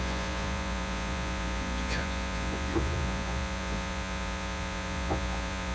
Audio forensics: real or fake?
fake